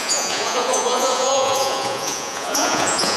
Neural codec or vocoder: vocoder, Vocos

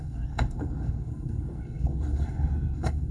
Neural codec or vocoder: codec, SNAC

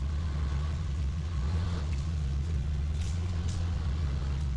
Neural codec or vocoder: vocoder, Vocos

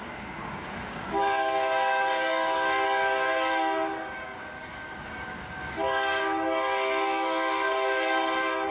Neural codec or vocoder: codec, DAC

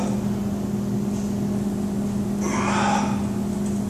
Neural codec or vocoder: none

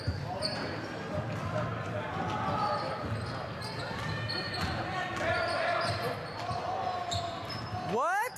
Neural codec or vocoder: none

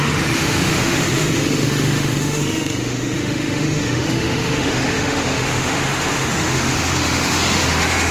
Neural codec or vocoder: autoencoder, DAC-VAE